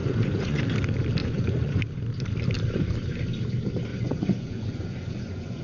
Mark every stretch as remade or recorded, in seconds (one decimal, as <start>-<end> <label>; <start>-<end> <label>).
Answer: 0.0-0.6 remade; 0.6-1.2 recorded; 1.2-1.8 remade; 1.8-3.9 recorded; 3.9-5.6 remade